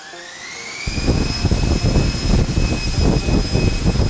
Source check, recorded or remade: recorded